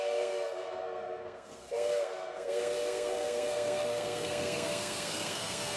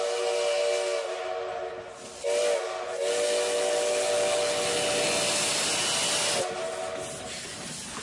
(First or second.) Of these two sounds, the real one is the second